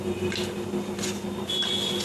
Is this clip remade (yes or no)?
no